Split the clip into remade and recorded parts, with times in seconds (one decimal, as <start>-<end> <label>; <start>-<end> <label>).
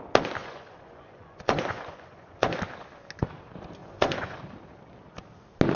0.0-0.4 recorded; 0.4-2.6 remade; 2.6-3.8 recorded; 3.8-4.4 remade; 4.4-5.8 recorded